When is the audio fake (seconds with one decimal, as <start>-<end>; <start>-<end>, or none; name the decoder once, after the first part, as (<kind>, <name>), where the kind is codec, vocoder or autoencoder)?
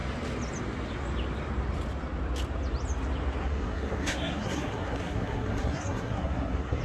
3.4-6.8 (codec, SNAC)